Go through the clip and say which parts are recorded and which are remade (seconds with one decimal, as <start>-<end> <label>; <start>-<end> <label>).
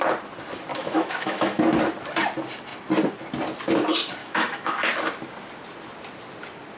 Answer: 0.0-0.7 recorded; 0.7-1.6 remade; 1.6-4.2 recorded; 4.2-4.9 remade; 4.9-6.8 recorded